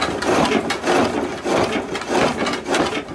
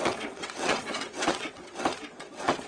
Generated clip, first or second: second